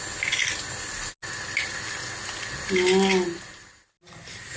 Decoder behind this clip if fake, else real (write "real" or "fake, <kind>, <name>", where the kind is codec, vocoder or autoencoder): real